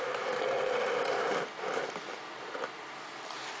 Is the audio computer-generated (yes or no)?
no